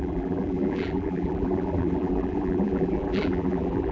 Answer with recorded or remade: remade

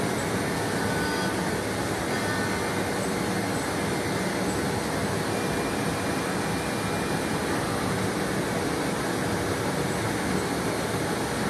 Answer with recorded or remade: recorded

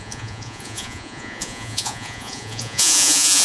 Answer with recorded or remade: remade